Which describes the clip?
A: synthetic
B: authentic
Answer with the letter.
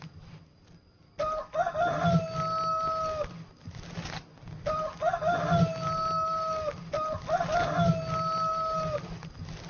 B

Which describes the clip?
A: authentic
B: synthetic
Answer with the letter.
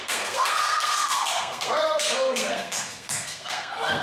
B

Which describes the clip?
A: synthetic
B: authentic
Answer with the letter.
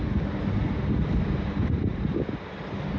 B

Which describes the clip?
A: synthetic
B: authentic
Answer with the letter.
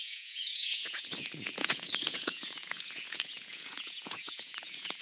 A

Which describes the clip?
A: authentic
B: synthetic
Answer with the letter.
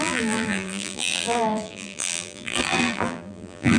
B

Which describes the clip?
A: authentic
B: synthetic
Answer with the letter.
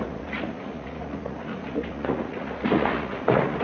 B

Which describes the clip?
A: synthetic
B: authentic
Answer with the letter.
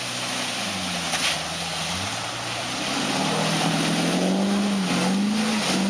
B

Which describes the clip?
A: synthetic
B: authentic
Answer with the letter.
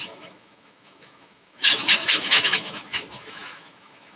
A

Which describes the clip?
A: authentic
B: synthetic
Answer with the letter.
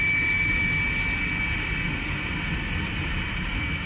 A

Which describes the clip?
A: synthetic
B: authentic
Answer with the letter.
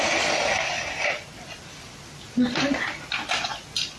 B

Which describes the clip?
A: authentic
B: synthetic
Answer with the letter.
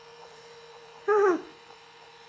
B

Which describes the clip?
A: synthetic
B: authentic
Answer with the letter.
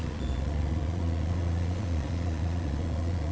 A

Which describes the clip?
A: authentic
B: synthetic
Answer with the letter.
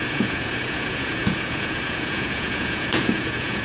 B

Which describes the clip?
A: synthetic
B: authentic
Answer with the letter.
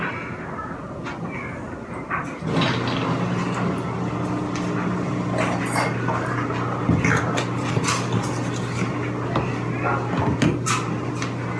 B